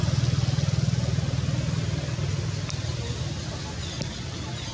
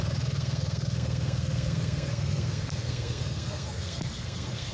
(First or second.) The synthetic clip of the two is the second